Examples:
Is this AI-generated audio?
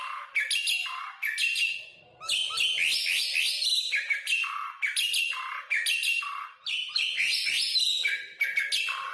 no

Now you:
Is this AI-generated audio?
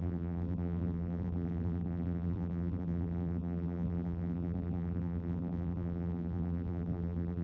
yes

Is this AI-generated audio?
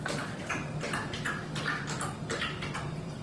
no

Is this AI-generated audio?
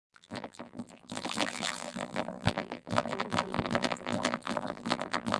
yes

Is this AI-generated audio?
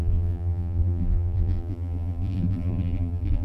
yes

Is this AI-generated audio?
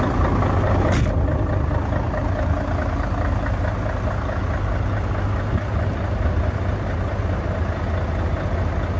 no